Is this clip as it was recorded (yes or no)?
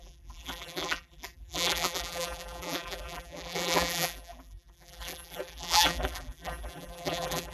no